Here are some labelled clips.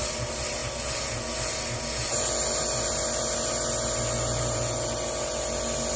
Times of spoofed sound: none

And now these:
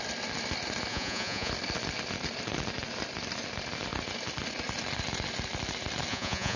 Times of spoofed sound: 0.9-1.5 (vocoder, Vocos); 6.1-6.6

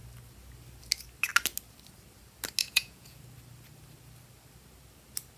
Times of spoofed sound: 2.6-3.2 (vocoder, Vocos)

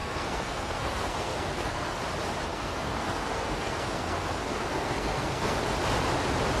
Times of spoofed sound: 0.0-2.0 (codec, SNAC); 2.5-5.6

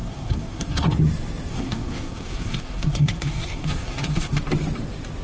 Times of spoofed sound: 0.0-0.9 (codec, SNAC); 1.5-4.4

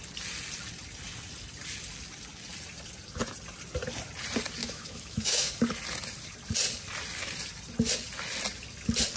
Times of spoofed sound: 4.6-5.5 (autoencoder, DAC-VAE)

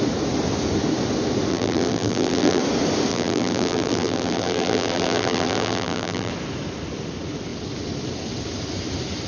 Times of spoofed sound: 1.5-2.6 (vocoder, BigVGAN v2); 3.1-6.3